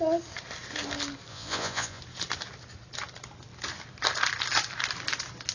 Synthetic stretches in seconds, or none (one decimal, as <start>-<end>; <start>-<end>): 1.3-2.0